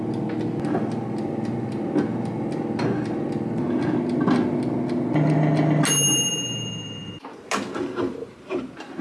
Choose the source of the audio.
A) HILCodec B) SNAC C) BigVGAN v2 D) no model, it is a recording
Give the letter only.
D